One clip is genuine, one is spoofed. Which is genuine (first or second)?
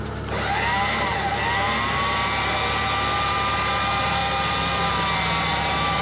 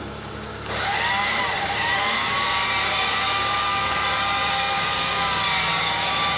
first